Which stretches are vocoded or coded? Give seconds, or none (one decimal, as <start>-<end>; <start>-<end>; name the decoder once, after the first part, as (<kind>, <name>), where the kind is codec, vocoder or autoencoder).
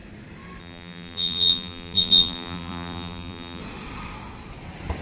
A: 0.6-3.6 (vocoder, BigVGAN v2)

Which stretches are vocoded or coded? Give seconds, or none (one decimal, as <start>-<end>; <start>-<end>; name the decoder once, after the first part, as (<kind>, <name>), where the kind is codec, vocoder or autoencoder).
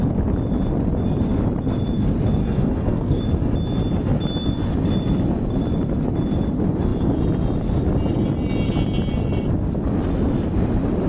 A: 2.4-3.2 (codec, SNAC)